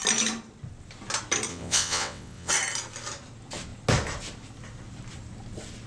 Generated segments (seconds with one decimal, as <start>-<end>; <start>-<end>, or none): 1.5-2.5